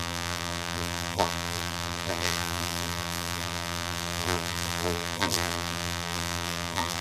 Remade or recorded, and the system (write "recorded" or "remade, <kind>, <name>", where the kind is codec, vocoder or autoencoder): remade, vocoder, BigVGAN v2